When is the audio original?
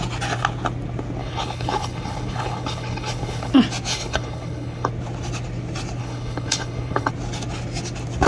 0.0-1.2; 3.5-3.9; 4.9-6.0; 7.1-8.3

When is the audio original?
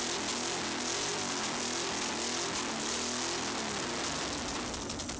0.0-5.2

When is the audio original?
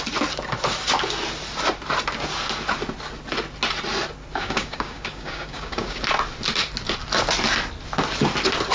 0.0-4.4; 6.0-8.7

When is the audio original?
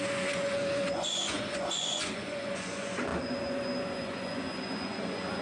none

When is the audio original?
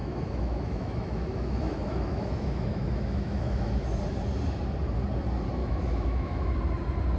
4.0-5.6; 6.5-7.2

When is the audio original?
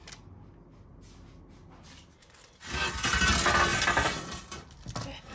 0.0-3.7; 4.4-5.3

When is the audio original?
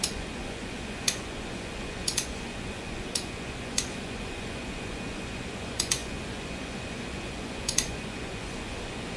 none